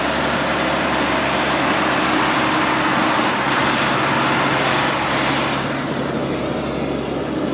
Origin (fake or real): real